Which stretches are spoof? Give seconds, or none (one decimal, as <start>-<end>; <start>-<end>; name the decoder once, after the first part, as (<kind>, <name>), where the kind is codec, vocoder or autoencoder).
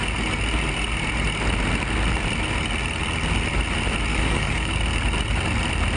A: 4.1-4.7 (codec, DAC)